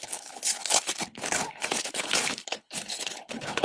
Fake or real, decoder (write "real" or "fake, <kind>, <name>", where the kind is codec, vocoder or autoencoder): fake, codec, HILCodec